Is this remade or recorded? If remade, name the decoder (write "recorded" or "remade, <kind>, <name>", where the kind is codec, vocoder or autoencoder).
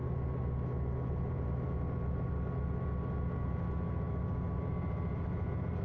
recorded